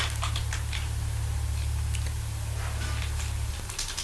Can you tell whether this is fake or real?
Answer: real